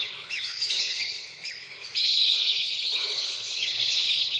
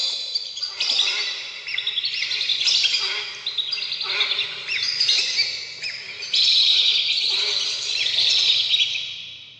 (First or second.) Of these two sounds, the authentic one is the second